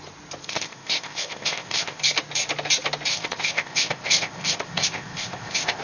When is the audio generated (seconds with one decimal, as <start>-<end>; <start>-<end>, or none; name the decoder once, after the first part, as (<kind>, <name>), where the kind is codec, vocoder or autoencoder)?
0.4-2.0 (codec, ZipCodec); 3.1-5.8